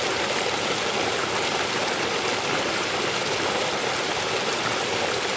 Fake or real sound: real